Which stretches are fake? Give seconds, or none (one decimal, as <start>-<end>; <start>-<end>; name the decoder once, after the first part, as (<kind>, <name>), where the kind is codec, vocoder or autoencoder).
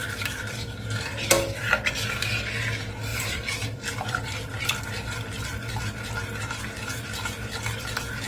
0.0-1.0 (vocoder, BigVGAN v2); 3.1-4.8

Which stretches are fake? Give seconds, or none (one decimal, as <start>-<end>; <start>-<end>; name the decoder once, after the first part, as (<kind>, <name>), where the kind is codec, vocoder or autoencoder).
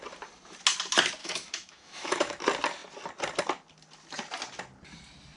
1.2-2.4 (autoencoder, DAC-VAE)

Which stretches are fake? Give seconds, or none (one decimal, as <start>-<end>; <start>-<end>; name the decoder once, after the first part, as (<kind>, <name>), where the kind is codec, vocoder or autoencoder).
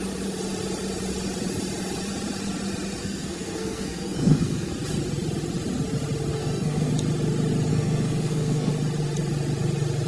3.0-4.7 (codec, SNAC); 6.3-6.9; 7.7-8.7